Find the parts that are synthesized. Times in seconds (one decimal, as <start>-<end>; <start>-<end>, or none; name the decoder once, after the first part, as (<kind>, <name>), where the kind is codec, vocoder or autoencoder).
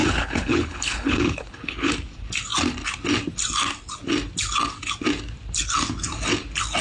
0.0-1.9 (codec, HILCodec)